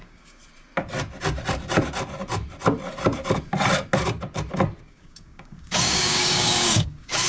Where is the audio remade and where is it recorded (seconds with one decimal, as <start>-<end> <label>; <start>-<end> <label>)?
0.0-0.4 remade; 0.4-4.8 recorded; 4.8-7.3 remade